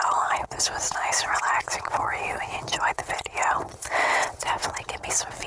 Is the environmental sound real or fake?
fake